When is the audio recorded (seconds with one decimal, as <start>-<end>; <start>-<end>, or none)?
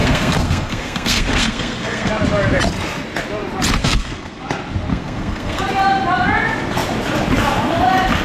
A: 2.1-3.8; 4.4-4.9; 5.6-8.2